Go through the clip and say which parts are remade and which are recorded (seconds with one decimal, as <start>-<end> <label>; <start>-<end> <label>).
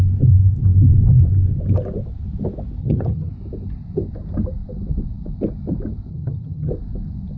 0.0-2.8 recorded; 2.8-3.3 remade; 3.3-6.1 recorded; 6.1-6.7 remade; 6.7-7.4 recorded